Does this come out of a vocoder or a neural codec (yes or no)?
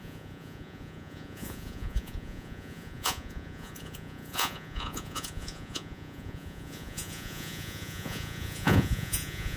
yes